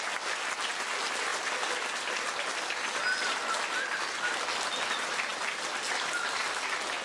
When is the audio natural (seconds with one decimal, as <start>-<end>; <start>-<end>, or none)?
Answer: 0.0-7.0